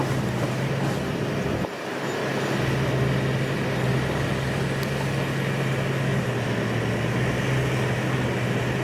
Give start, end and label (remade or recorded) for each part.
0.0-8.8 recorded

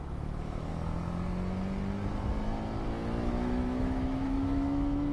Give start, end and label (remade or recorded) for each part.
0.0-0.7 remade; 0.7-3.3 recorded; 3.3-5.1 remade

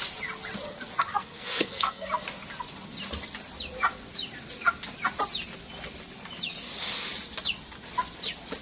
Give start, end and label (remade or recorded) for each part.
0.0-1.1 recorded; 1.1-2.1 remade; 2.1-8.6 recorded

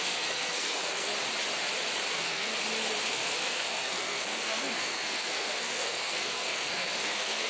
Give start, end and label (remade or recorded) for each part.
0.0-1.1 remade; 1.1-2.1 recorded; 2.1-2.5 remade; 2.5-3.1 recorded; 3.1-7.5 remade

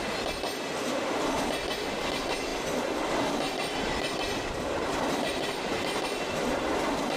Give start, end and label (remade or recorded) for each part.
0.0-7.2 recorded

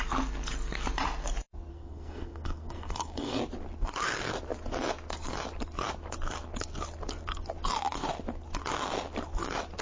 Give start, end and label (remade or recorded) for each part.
0.0-1.7 recorded; 1.7-3.4 remade; 3.4-9.8 recorded